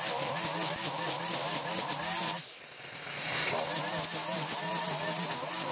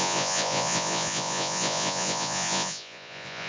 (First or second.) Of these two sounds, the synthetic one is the second